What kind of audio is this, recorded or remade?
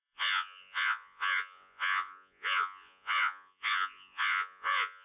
remade